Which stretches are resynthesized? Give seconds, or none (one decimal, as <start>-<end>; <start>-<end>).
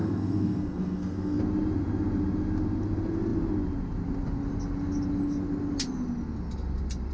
0.0-1.4